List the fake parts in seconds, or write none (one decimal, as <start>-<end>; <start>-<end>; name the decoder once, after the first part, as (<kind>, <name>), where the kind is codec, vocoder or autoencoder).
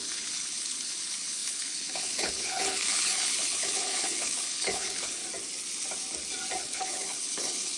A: 0.0-5.2 (codec, HILCodec); 6.6-7.8